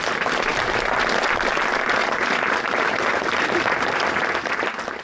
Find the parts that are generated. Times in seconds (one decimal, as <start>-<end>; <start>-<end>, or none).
none